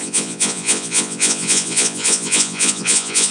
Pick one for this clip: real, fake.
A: fake